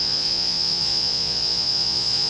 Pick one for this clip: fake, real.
fake